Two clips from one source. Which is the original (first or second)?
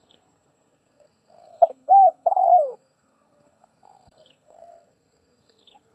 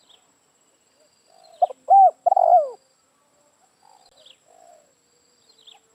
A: second